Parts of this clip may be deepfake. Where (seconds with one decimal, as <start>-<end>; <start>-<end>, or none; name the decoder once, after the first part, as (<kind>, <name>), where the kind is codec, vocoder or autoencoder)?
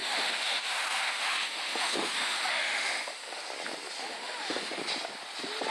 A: 0.0-3.4 (autoencoder, DAC-VAE); 4.0-4.8